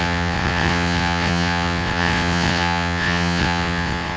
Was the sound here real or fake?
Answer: fake